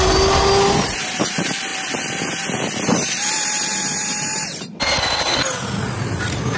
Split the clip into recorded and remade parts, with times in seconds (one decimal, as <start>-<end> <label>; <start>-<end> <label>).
0.0-6.6 recorded